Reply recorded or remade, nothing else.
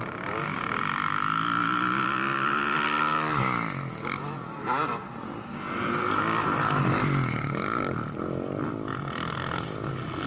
recorded